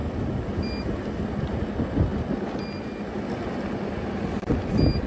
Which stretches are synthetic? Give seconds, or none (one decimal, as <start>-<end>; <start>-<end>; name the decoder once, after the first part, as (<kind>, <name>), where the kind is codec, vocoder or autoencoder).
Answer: none